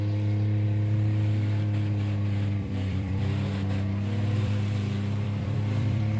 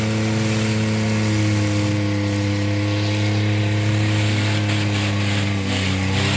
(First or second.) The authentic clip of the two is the second